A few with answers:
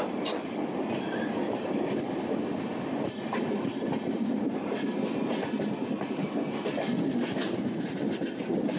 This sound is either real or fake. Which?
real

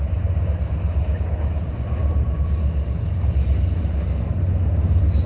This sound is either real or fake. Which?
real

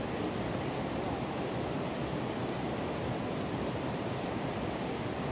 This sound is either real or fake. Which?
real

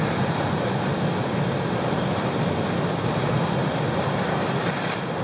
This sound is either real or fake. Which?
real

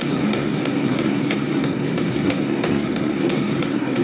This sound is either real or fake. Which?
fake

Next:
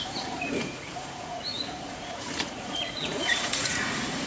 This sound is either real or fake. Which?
fake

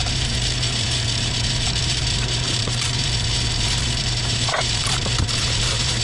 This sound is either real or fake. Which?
fake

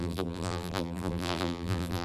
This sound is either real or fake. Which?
fake